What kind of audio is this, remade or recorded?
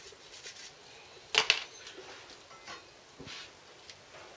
recorded